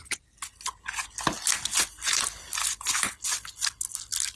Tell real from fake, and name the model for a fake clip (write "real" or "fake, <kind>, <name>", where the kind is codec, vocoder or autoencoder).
real